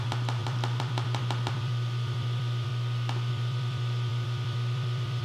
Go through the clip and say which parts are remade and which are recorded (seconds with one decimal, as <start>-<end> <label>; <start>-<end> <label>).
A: 0.0-2.7 remade; 2.7-3.3 recorded; 3.3-5.2 remade